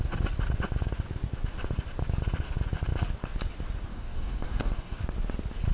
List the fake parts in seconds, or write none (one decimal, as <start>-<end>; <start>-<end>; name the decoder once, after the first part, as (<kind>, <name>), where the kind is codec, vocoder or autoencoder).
3.9-5.0 (codec, DAC)